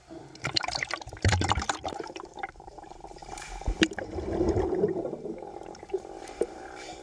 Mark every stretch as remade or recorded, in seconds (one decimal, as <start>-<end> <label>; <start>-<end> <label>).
0.0-7.0 remade